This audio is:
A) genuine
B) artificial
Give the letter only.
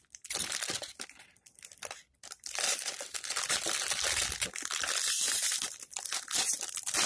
B